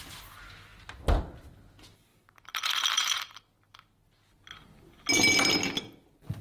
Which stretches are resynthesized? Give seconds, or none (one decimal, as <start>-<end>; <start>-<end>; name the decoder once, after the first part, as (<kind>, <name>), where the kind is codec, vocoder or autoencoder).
2.1-3.4 (vocoder, BigVGAN v2)